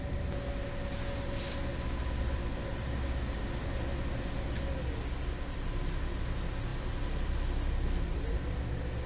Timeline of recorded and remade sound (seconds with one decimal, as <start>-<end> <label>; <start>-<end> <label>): 0.0-9.1 recorded